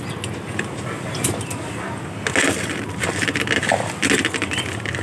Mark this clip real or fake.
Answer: real